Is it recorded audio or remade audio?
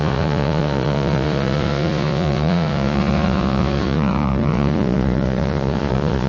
remade